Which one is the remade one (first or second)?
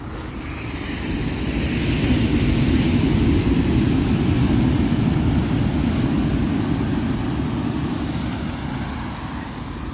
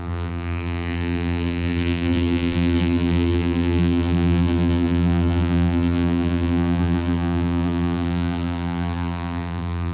second